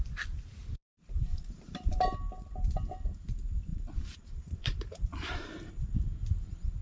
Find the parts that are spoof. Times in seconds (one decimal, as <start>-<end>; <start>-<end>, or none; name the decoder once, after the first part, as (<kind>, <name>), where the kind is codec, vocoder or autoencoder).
0.6-2.0 (vocoder, BigVGAN v2); 3.7-5.7